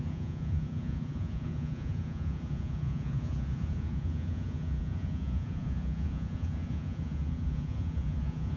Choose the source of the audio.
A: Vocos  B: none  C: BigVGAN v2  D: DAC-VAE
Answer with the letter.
A